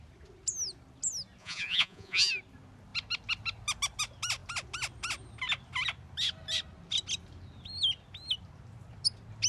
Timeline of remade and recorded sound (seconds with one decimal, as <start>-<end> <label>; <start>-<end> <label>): 0.0-1.4 recorded; 1.4-2.3 remade; 2.3-9.5 recorded